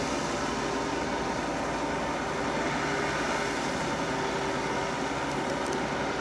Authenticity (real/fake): real